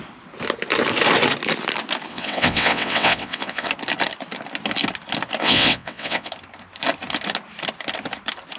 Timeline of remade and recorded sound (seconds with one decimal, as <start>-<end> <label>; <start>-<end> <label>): 0.0-2.1 recorded; 2.1-3.7 remade; 3.7-5.4 recorded; 5.4-6.3 remade; 6.3-8.6 recorded